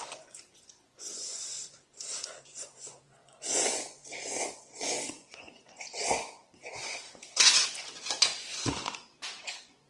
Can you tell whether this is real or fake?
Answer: fake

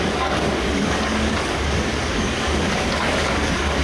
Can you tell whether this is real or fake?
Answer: fake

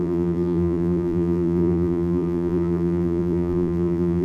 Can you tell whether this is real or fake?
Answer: fake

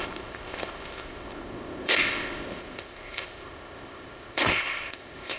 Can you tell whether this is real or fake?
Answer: fake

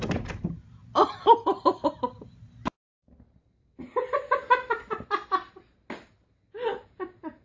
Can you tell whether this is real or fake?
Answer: real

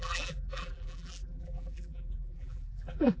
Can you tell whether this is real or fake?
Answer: fake